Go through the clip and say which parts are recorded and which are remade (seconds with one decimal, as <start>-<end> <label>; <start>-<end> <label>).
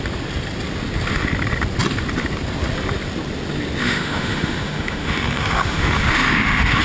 0.0-3.8 recorded; 3.8-6.8 remade